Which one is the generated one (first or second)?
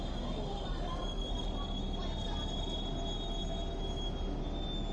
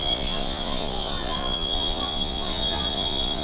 second